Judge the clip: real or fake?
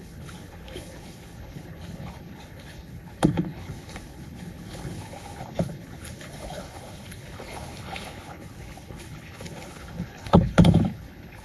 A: fake